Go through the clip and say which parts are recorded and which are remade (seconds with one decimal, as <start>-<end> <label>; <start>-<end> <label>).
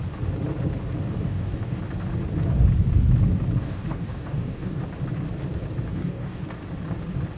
0.0-1.2 recorded; 1.2-1.8 remade; 1.8-3.6 recorded; 3.6-4.8 remade; 4.8-5.9 recorded; 5.9-6.4 remade; 6.4-7.4 recorded